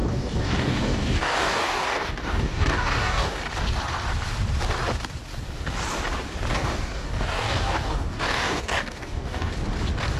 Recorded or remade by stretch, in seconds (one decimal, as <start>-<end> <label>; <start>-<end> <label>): 0.0-3.4 remade; 3.4-6.5 recorded; 6.5-9.5 remade; 9.5-10.2 recorded